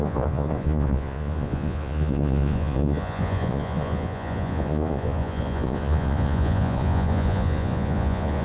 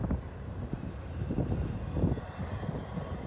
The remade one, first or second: first